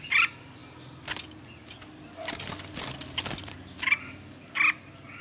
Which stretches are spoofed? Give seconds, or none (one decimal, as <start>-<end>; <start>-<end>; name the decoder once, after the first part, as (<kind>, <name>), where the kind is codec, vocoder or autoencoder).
none